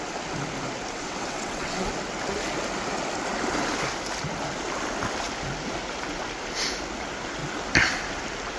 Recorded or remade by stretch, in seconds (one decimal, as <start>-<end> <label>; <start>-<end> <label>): 0.0-0.9 recorded; 0.9-1.9 remade; 1.9-8.6 recorded